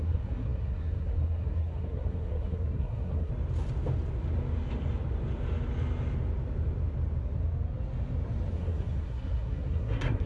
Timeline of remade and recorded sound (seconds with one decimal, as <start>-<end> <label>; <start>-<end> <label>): 0.0-3.3 remade; 3.3-8.5 recorded; 8.5-10.3 remade